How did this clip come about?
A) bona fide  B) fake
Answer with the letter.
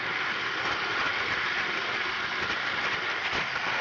A